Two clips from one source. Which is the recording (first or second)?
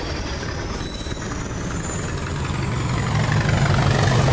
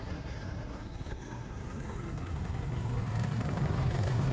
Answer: first